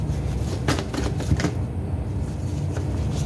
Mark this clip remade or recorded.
recorded